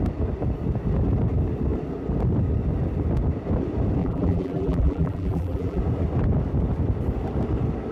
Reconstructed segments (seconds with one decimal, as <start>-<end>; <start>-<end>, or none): 4.0-5.8

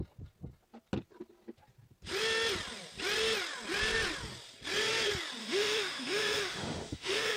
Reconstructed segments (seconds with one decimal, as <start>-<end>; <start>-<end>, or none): 5.4-7.4

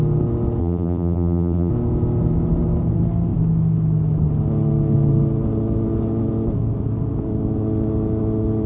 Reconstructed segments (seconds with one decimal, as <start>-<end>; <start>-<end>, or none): 0.6-1.7